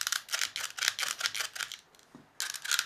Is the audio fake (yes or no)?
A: no